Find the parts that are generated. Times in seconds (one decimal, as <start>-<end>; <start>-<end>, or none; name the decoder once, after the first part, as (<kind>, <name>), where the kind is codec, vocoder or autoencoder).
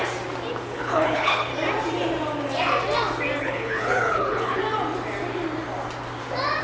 0.5-1.5 (codec, HILCodec); 3.4-4.6